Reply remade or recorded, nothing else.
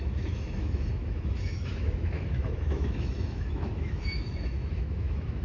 remade